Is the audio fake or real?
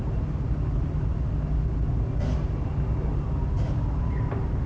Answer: real